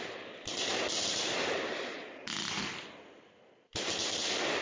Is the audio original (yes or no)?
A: yes